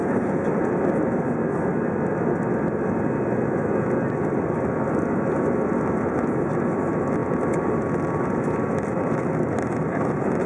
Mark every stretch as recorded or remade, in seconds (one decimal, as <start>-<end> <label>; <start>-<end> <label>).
0.0-10.5 recorded